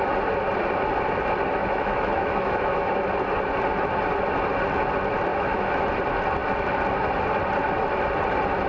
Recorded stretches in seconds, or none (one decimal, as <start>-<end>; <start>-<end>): 0.0-1.6; 2.9-5.3; 5.9-8.7